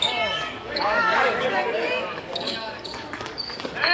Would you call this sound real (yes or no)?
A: no